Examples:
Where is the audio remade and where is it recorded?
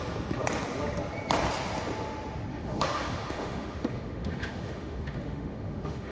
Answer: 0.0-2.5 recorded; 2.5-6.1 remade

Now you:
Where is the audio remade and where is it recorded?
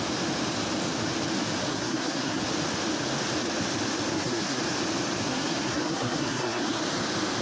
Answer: 0.0-1.7 recorded; 1.7-2.4 remade; 2.4-4.1 recorded; 4.1-4.6 remade; 4.6-5.2 recorded; 5.2-6.8 remade; 6.8-7.4 recorded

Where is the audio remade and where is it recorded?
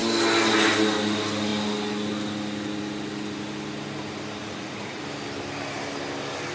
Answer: 0.0-4.4 recorded; 4.4-5.0 remade; 5.0-6.5 recorded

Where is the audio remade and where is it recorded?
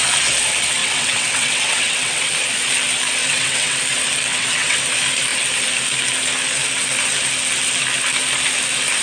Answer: 0.0-0.8 recorded; 0.8-2.3 remade; 2.3-3.2 recorded; 3.2-3.8 remade; 3.8-4.3 recorded; 4.3-4.8 remade; 4.8-9.0 recorded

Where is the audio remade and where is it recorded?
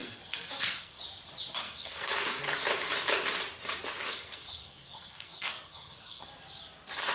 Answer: 0.0-1.0 remade; 1.0-1.6 recorded; 1.6-2.4 remade; 2.4-4.1 recorded; 4.1-6.3 remade; 6.3-7.1 recorded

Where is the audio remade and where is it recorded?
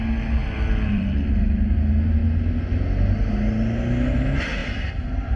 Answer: 0.0-0.4 recorded; 0.4-1.1 remade; 1.1-4.6 recorded; 4.6-5.4 remade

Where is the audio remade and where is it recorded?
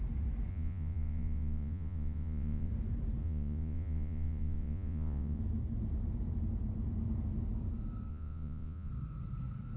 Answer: 0.0-0.5 recorded; 0.5-2.7 remade; 2.7-3.2 recorded; 3.2-5.4 remade; 5.4-8.1 recorded; 8.1-8.9 remade; 8.9-9.8 recorded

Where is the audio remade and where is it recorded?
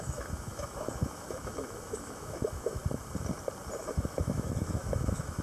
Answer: 0.0-2.8 remade; 2.8-3.8 recorded; 3.8-5.4 remade